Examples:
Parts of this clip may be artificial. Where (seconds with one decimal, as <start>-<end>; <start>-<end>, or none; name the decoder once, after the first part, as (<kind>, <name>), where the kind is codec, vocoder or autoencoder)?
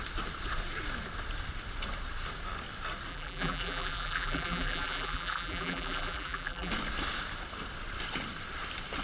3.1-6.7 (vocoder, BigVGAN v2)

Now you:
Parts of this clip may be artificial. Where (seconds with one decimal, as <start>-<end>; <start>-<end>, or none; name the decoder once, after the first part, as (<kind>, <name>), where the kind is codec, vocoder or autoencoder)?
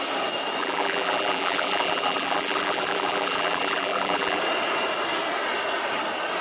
0.6-4.4 (vocoder, BigVGAN v2)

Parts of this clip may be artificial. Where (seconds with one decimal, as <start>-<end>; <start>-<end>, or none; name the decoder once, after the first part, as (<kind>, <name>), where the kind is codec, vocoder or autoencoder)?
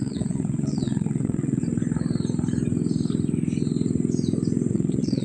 0.0-1.6 (vocoder, WaveNeXt); 4.7-5.2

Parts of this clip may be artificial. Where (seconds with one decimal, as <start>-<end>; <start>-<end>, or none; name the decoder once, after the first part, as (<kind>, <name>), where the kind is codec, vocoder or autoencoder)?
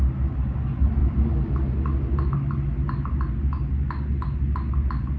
none